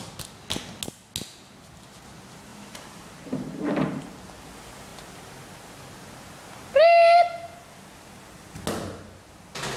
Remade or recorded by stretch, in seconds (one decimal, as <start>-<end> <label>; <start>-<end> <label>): 0.0-2.5 recorded; 2.5-4.0 remade; 4.0-9.8 recorded